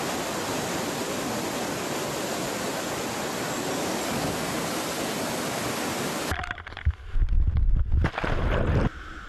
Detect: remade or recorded remade